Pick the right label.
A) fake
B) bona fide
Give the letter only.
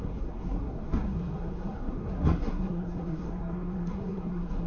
A